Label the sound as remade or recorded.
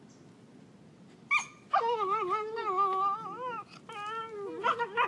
recorded